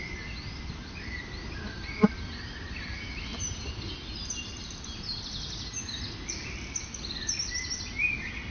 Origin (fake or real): real